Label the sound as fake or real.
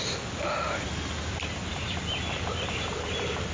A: real